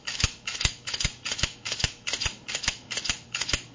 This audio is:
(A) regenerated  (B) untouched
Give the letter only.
A